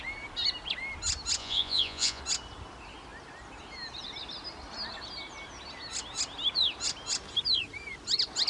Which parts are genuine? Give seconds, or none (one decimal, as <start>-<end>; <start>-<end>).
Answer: 0.0-1.4; 2.2-8.5